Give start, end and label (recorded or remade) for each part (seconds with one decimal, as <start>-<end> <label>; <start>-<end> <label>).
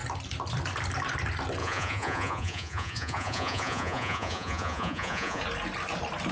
0.0-1.6 recorded; 1.6-5.4 remade; 5.4-6.3 recorded